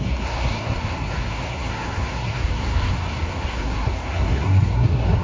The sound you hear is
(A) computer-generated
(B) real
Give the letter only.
A